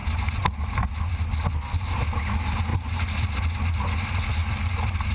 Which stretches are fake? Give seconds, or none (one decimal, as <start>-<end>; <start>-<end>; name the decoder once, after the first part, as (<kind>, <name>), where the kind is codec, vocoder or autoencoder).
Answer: none